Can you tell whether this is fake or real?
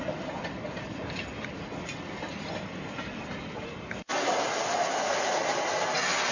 real